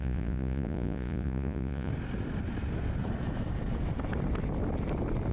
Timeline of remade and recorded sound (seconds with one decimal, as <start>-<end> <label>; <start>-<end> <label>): 0.0-1.9 remade; 1.9-5.3 recorded